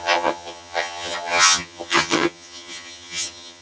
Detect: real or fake fake